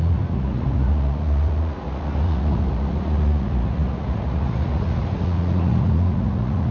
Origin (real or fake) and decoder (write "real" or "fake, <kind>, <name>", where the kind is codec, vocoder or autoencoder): fake, vocoder, Vocos